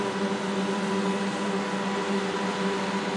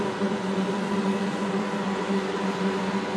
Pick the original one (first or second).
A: first